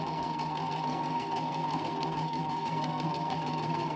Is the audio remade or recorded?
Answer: remade